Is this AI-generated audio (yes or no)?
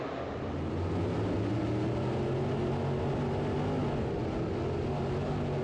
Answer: no